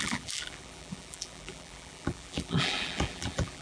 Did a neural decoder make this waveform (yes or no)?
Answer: yes